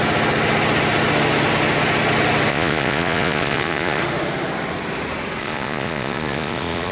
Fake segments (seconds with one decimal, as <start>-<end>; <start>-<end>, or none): 2.5-4.0; 5.4-6.9